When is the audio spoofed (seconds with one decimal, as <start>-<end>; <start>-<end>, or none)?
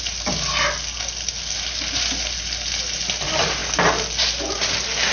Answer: none